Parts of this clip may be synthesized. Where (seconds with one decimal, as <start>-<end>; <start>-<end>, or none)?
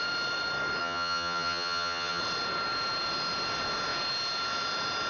0.8-2.2